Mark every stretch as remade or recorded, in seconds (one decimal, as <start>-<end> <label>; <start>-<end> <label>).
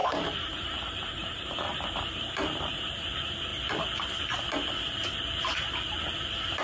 0.0-1.5 remade; 1.5-6.6 recorded